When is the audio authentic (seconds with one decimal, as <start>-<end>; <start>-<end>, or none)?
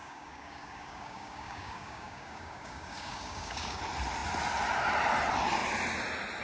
3.8-6.4